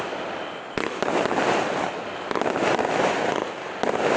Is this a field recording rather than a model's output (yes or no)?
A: yes